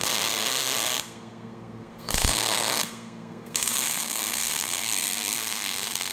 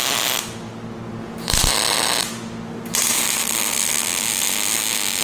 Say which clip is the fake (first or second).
first